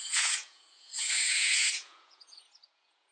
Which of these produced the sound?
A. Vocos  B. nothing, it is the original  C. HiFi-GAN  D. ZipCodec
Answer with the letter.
A